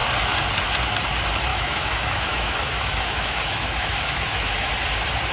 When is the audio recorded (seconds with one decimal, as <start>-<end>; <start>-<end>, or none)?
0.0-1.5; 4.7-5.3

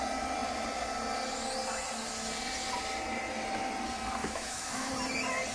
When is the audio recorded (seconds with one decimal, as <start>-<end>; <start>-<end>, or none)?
0.0-4.2; 4.9-5.5

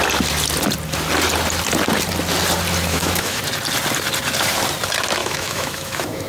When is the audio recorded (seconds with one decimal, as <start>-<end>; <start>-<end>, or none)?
0.0-2.9; 3.4-5.2

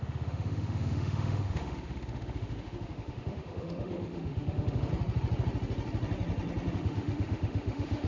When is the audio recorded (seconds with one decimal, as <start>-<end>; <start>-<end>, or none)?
4.9-6.7

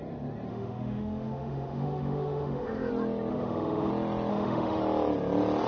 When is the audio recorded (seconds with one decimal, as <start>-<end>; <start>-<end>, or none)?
0.0-0.5; 2.9-3.3; 3.9-4.3; 4.8-5.7